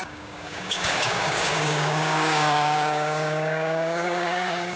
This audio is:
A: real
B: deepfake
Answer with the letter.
B